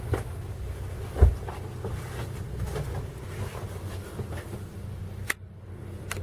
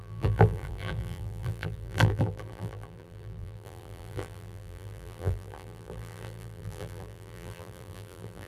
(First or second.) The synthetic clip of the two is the second